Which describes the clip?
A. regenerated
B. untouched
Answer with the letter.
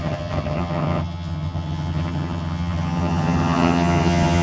A